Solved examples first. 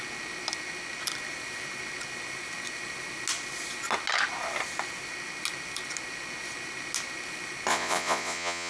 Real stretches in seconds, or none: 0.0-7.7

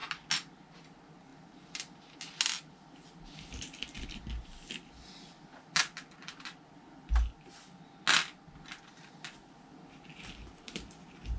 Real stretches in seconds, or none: 0.0-11.4

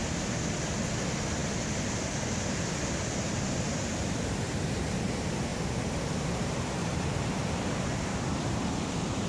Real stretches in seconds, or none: 0.0-6.8; 8.9-9.3